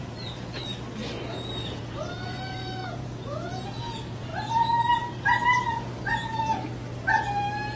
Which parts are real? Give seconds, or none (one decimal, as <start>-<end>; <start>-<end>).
0.6-1.3; 4.3-7.8